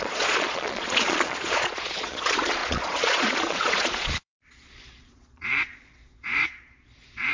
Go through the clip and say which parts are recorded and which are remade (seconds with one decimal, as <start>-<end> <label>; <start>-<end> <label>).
0.0-7.3 remade